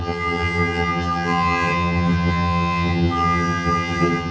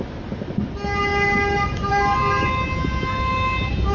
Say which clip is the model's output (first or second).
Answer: first